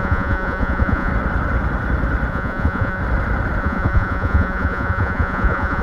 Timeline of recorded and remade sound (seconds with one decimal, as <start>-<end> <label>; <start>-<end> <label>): 0.0-1.1 remade; 1.1-2.3 recorded; 2.3-3.0 remade; 3.0-3.6 recorded; 3.6-5.8 remade